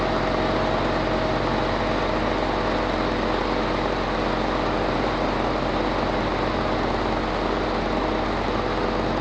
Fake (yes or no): no